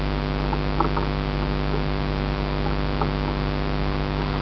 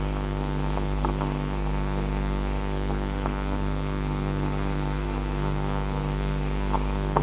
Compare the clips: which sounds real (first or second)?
first